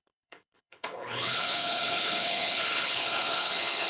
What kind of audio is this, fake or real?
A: fake